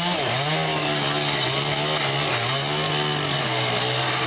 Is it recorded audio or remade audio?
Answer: recorded